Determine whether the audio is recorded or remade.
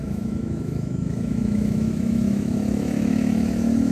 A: remade